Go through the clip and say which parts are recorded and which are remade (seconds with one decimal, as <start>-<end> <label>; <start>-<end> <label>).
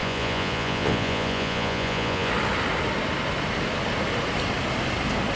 0.0-2.3 remade; 2.3-5.4 recorded